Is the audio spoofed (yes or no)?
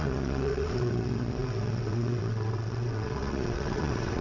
yes